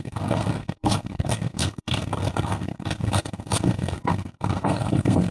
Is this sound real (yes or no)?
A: no